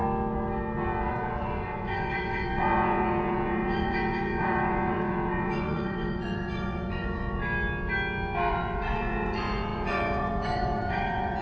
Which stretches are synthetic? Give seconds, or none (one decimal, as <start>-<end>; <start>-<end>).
1.1-7.4; 8.5-11.4